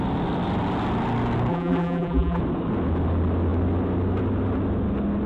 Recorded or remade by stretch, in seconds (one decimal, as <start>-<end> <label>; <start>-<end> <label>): 0.0-1.5 recorded; 1.5-2.4 remade; 2.4-5.3 recorded